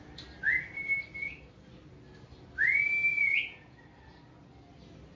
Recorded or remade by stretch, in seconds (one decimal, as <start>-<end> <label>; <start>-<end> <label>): 0.0-3.1 recorded; 3.1-3.8 remade; 3.8-5.2 recorded